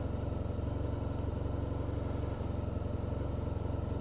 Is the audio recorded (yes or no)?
yes